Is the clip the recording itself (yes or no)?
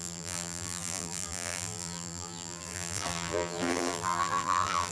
no